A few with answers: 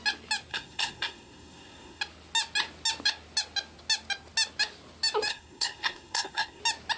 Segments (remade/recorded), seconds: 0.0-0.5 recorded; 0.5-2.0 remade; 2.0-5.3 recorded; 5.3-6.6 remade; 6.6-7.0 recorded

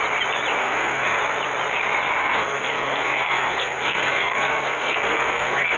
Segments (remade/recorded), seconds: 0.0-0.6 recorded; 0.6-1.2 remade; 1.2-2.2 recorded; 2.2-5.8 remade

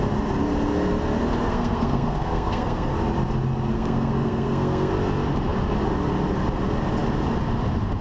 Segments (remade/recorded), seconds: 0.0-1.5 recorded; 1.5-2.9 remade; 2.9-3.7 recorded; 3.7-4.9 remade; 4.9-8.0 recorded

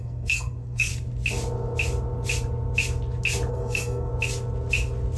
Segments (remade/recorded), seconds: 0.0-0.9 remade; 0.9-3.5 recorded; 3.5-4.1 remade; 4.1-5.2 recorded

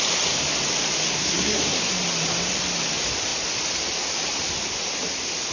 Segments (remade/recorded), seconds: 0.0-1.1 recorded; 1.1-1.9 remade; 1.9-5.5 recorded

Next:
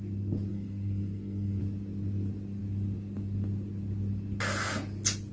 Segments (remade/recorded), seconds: 0.0-0.5 recorded; 0.5-1.6 remade; 1.6-5.3 recorded